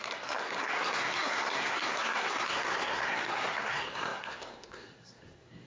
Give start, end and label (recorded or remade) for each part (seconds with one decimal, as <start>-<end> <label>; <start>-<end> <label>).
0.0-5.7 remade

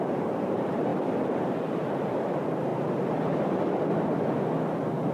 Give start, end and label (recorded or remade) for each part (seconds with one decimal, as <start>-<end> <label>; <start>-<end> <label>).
0.0-2.7 remade; 2.7-5.1 recorded

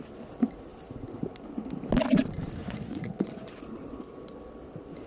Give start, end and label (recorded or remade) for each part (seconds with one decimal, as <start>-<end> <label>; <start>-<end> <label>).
0.0-2.6 recorded; 2.6-3.5 remade; 3.5-5.1 recorded

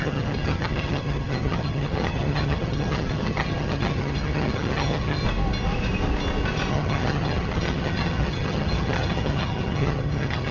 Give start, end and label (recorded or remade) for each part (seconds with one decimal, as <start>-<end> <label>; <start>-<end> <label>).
0.0-5.2 remade; 5.2-6.7 recorded; 6.7-10.5 remade